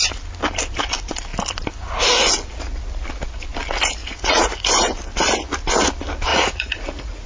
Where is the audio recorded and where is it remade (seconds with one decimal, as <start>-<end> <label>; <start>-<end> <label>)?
0.0-4.0 recorded; 4.0-4.7 remade; 4.7-6.3 recorded; 6.3-7.3 remade